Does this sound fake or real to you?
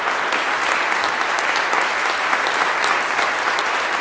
real